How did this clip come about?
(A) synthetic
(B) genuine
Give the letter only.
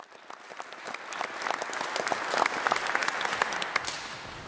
B